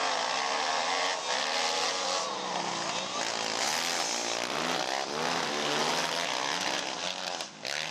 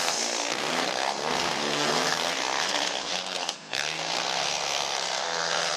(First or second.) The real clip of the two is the first